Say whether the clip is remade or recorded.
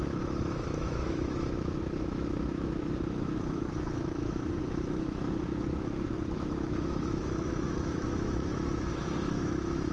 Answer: remade